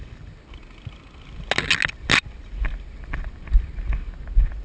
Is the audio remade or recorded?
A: recorded